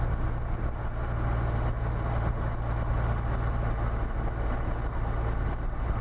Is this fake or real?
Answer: real